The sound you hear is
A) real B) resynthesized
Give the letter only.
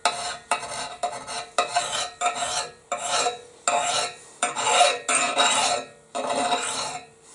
A